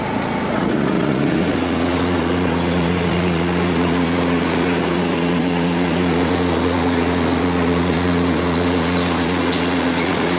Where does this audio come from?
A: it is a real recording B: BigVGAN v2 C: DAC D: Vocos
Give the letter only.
D